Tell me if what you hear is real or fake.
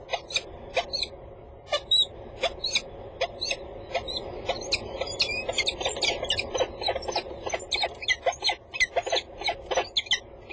real